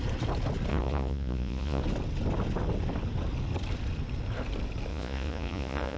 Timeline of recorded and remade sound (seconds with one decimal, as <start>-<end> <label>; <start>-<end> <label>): 0.0-0.7 recorded; 0.7-1.8 remade; 1.8-4.9 recorded; 4.9-6.0 remade